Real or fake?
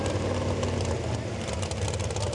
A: real